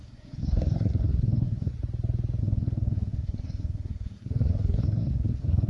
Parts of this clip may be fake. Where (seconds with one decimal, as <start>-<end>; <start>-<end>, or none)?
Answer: 0.0-1.7; 2.4-5.7